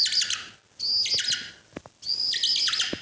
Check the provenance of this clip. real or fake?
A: real